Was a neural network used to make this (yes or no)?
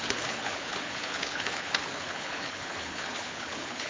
yes